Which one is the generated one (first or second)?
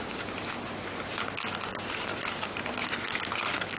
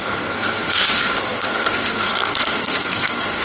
second